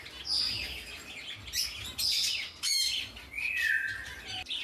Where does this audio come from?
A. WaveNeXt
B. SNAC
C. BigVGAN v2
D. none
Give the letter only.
D